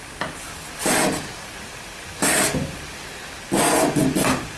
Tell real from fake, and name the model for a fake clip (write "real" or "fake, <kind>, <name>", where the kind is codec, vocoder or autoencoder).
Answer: real